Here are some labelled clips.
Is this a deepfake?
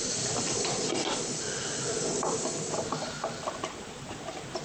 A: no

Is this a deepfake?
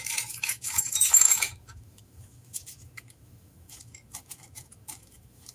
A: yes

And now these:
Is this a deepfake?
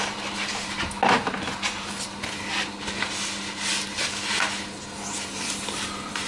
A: no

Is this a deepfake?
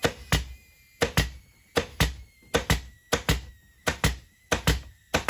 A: no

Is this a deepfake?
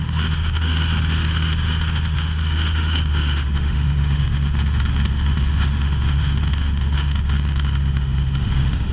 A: yes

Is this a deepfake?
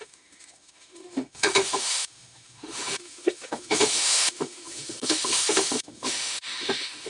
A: yes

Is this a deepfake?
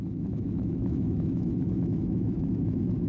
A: yes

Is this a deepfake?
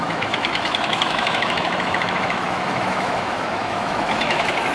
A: yes